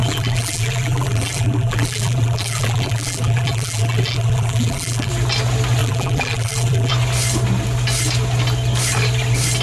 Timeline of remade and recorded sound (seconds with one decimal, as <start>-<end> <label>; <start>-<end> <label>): 0.0-5.1 remade; 5.1-5.8 recorded; 5.8-6.9 remade; 6.9-9.6 recorded